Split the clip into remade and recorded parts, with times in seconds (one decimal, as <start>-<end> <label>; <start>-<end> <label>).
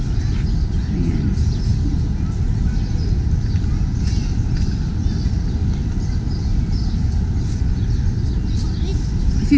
0.0-9.6 recorded